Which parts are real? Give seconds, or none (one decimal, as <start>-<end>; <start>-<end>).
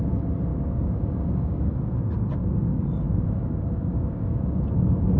0.0-0.5; 1.7-2.4; 4.6-5.2